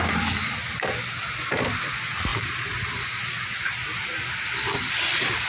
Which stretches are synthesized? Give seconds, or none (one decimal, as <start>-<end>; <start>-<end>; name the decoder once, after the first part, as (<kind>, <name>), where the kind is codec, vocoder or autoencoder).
none